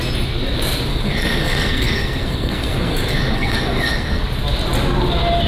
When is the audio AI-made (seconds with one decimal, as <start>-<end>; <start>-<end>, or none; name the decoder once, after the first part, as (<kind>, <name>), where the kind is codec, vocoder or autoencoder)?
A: 0.9-4.2 (codec, SNAC)